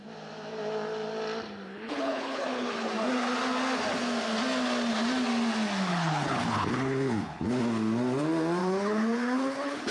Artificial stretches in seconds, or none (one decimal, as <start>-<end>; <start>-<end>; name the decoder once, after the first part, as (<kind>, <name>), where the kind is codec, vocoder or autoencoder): 1.7-2.9 (codec, HILCodec); 5.9-7.6; 8.6-9.9